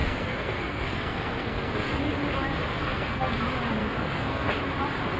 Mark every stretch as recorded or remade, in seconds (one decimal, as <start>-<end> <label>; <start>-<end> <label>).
0.0-2.1 remade; 2.1-2.8 recorded; 2.8-3.4 remade; 3.4-3.8 recorded; 3.8-4.5 remade; 4.5-5.2 recorded